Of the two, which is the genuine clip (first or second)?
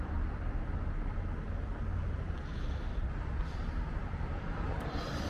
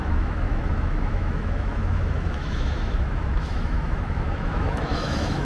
first